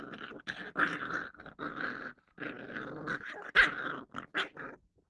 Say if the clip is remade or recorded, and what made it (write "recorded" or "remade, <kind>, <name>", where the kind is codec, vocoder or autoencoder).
recorded